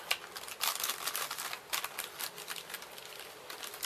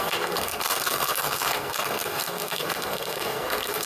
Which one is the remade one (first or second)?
second